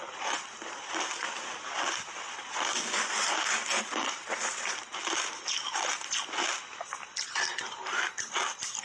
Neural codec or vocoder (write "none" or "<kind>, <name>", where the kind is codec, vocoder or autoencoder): none